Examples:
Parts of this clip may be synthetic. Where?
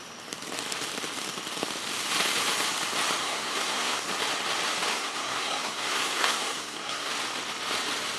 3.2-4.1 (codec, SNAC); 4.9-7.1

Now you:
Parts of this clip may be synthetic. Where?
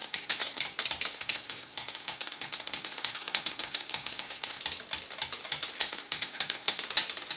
0.0-0.6 (codec, SNAC); 1.1-4.6; 5.8-6.8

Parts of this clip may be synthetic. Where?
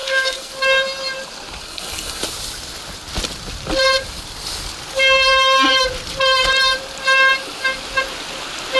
0.0-0.5 (codec, SNAC); 1.6-2.2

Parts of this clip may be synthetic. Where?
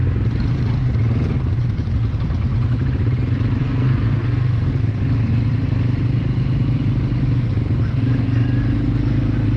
3.6-5.0 (codec, SNAC)